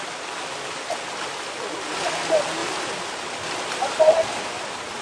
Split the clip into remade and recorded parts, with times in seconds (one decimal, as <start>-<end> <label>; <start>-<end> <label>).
0.0-5.0 recorded